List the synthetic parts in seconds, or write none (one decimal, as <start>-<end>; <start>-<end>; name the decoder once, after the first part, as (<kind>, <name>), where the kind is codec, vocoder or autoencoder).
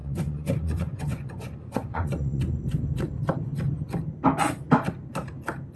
0.0-2.4 (vocoder, Vocos)